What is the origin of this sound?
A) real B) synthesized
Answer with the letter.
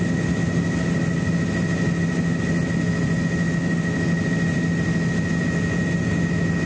A